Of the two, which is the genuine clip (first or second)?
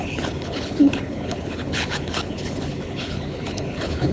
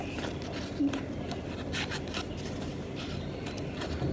second